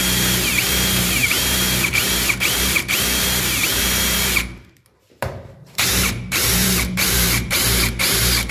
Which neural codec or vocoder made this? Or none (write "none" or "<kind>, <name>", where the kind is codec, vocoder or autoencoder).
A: vocoder, BigVGAN v2